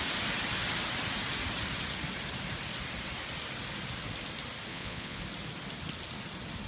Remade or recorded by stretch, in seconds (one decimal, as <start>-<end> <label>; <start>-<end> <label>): 0.0-4.7 recorded; 4.7-5.2 remade; 5.2-6.7 recorded